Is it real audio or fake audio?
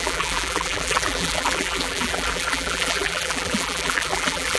fake